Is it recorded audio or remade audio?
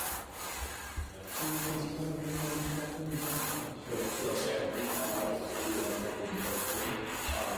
recorded